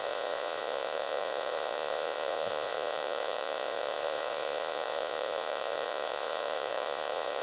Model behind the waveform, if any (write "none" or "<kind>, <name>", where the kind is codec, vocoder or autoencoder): vocoder, Vocos